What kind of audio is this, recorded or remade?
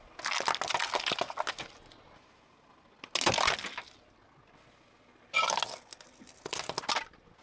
recorded